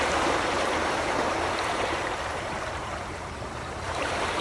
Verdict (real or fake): fake